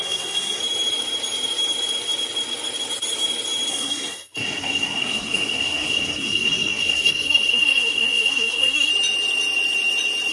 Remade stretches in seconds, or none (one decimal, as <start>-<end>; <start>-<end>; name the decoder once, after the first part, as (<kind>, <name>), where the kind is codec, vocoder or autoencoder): 0.0-0.6 (codec, SNAC); 3.7-8.9